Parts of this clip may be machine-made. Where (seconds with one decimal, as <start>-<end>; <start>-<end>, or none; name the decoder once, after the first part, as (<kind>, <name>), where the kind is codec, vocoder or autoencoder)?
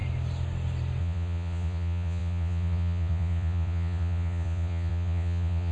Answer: 1.0-5.7 (vocoder, Vocos)